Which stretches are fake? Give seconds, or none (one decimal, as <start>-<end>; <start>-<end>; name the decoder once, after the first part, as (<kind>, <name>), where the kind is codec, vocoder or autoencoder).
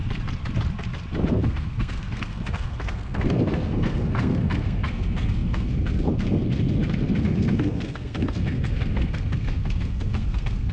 1.3-10.7 (codec, SNAC)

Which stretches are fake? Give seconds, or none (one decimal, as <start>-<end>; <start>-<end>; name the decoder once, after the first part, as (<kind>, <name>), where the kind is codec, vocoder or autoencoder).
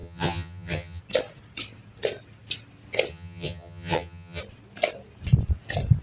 0.0-1.0 (vocoder, HiFi-GAN); 3.1-4.4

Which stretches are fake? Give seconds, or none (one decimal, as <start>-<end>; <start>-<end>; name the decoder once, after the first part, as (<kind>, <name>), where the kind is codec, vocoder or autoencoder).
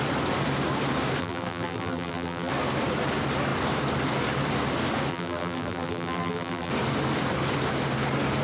1.2-2.5 (vocoder, BigVGAN v2); 5.1-6.7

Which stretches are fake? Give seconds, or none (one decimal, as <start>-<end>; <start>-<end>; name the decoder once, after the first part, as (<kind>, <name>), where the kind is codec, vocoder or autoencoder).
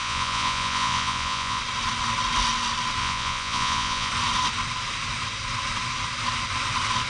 0.0-1.6 (vocoder, Vocos); 3.0-4.1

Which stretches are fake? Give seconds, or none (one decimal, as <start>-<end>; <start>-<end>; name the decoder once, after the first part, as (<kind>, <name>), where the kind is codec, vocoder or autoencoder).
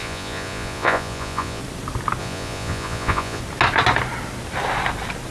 0.0-1.6 (vocoder, Vocos); 2.2-3.4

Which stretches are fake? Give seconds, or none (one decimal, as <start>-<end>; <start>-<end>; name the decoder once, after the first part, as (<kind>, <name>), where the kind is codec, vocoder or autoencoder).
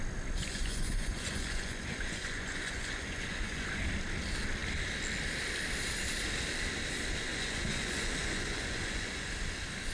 0.4-3.8 (vocoder, Vocos); 7.3-9.3